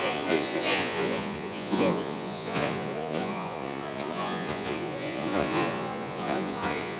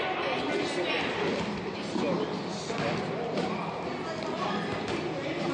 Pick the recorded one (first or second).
second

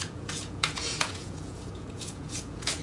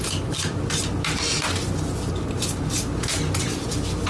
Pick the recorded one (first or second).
second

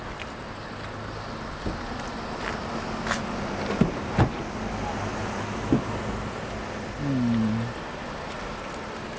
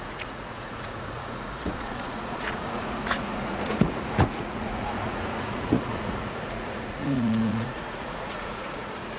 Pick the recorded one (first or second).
first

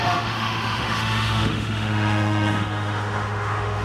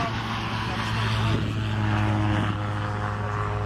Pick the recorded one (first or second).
second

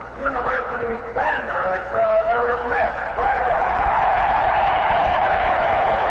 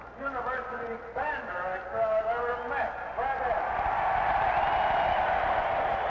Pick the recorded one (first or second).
second